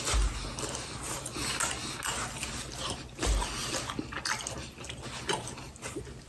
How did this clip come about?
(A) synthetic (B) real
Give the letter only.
B